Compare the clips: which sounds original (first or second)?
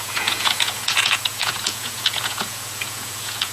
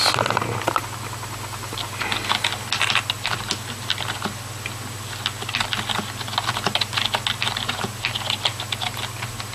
second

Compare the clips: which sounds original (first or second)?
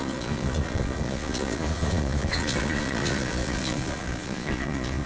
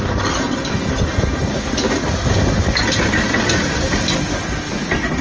second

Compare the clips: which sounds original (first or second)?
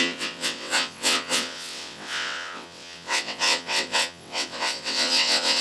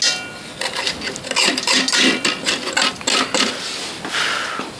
second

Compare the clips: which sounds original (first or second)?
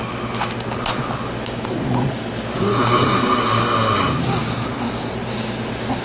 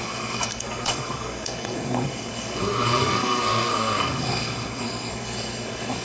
first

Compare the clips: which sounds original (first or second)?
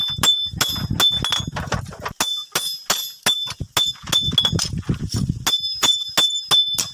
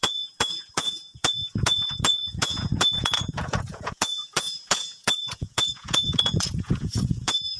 first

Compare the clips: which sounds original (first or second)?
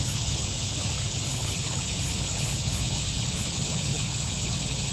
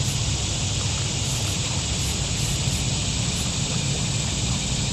second